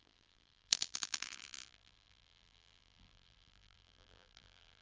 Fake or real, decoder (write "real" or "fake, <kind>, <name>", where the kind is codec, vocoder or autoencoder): fake, vocoder, BigVGAN v2